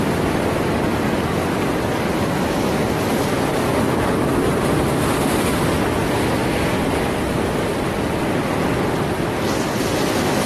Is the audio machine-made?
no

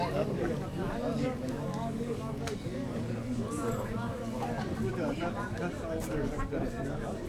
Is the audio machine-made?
yes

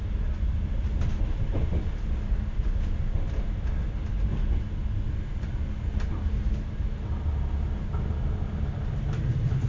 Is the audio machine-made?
no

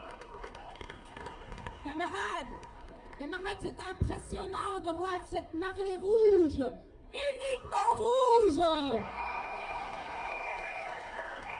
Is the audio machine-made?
yes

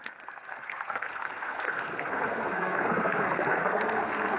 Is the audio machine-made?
yes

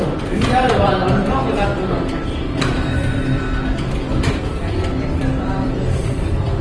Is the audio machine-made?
yes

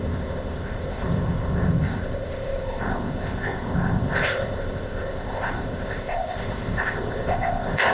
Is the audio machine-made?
yes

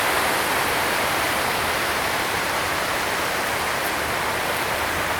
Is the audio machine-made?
yes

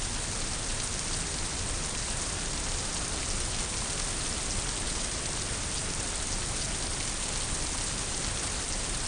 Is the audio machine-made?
no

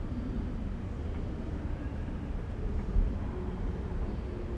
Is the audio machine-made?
no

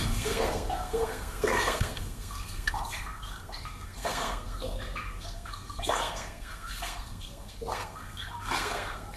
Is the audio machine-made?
yes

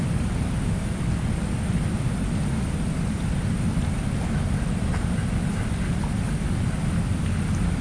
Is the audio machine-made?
no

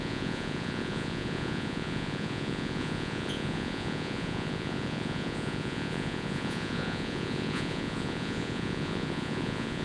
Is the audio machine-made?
yes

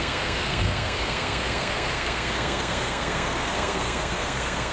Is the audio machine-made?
yes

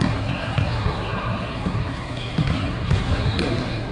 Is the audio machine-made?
yes